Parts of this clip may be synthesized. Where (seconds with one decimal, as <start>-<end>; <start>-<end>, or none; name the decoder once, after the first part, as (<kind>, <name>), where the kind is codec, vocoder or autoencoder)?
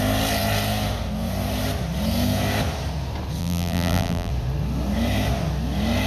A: 3.4-4.3 (vocoder, BigVGAN v2)